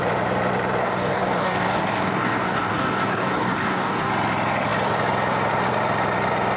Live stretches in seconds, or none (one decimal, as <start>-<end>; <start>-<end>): 0.0-0.8; 4.1-6.6